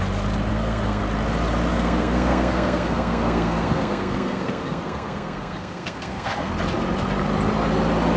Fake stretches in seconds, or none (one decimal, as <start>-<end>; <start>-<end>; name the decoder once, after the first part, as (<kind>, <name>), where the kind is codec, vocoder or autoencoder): 0.5-1.0 (codec, SNAC); 1.7-6.5